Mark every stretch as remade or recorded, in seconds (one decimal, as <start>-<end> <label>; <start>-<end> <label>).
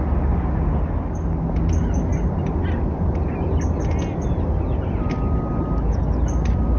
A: 0.0-6.8 recorded